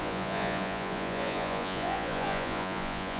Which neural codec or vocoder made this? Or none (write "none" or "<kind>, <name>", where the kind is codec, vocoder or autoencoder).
vocoder, Vocos